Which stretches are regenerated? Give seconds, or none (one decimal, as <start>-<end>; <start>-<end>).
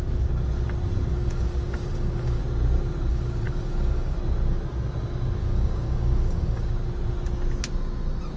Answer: 1.1-2.4; 3.1-4.2; 5.4-6.7